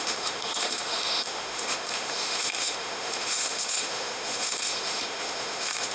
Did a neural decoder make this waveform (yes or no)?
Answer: yes